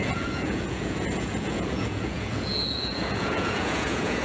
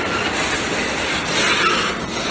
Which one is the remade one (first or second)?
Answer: first